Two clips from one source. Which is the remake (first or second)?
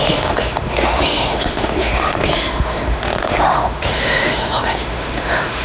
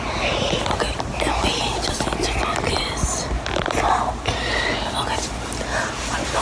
first